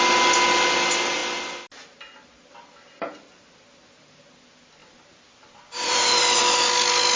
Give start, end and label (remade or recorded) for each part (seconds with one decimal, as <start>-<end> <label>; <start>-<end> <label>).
0.0-4.8 recorded; 4.8-6.4 remade; 6.4-7.2 recorded